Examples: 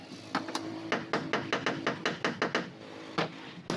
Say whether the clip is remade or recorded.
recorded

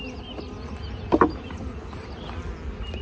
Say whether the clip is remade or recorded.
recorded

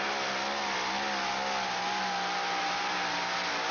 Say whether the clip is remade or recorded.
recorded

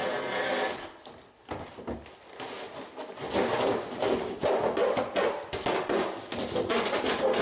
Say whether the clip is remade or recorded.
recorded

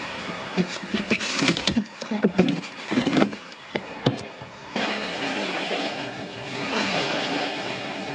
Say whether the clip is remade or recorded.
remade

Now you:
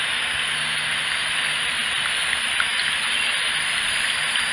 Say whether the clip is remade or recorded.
recorded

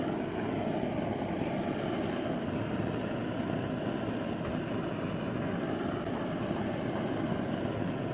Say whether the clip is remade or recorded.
recorded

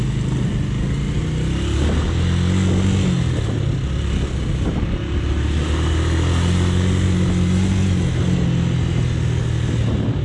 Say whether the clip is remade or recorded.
recorded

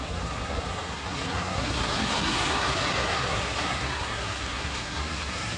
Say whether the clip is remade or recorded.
remade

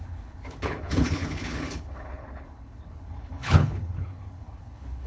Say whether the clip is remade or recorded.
remade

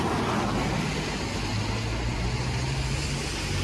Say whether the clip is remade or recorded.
recorded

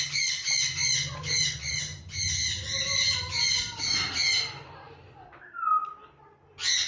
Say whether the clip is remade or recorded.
recorded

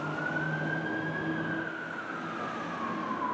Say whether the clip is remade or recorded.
recorded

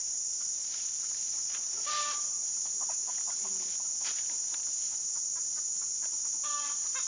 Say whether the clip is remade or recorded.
recorded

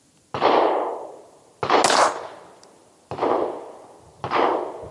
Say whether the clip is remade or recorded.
recorded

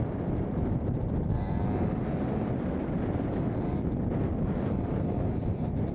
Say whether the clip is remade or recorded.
recorded